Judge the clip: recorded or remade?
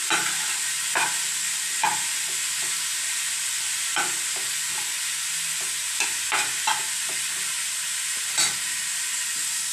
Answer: recorded